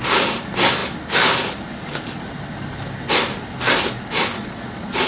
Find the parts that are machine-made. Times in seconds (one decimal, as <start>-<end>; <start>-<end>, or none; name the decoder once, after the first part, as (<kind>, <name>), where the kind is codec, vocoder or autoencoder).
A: 4.4-5.1 (vocoder, Vocos)